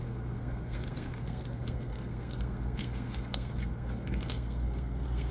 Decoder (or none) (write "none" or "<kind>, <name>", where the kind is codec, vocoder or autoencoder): codec, SNAC